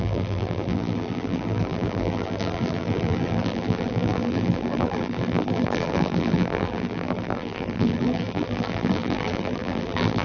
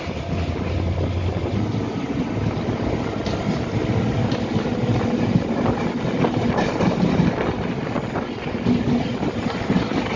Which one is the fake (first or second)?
first